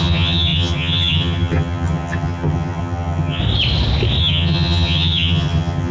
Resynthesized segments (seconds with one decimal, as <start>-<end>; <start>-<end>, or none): 0.0-3.4; 4.2-5.9